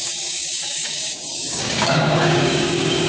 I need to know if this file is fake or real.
fake